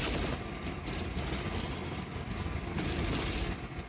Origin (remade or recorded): recorded